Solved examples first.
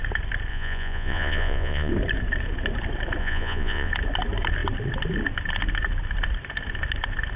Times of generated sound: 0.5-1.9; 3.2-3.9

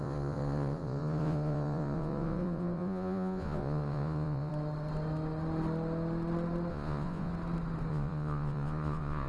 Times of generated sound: 0.0-4.5; 6.7-7.3; 7.9-9.3

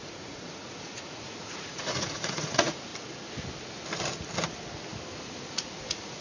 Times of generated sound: 0.0-2.9; 5.4-6.2

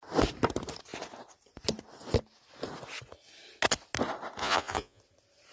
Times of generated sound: 4.4-5.0

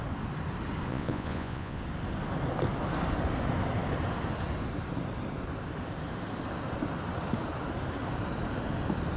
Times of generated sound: 0.9-1.8

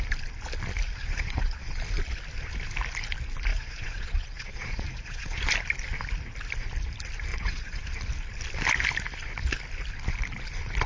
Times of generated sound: 1.0-1.8; 3.5-5.4; 7.3-7.8

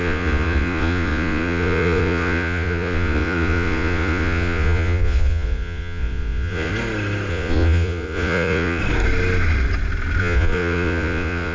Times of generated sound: 0.0-6.7; 7.3-8.8; 10.2-11.5

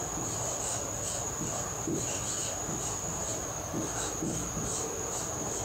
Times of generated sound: none